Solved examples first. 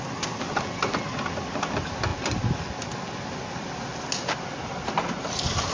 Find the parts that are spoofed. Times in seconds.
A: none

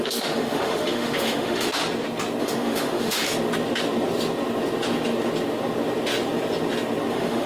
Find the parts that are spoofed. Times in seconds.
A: 0.0-1.8 (autoencoder, DAC-VAE); 2.4-3.3; 7.1-7.5

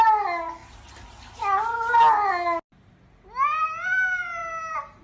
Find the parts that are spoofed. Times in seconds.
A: none

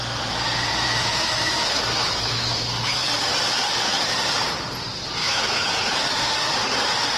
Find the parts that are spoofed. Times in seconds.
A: 1.0-3.1 (autoencoder, DAC-VAE); 5.2-6.2

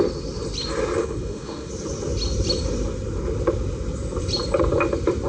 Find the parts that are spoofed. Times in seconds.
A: 1.0-1.7 (autoencoder, DAC-VAE)

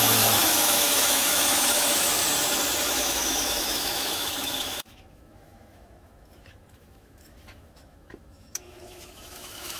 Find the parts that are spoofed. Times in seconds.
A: 0.0-2.2 (autoencoder, DAC-VAE); 2.8-9.8